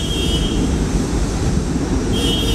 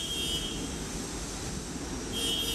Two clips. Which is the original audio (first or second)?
second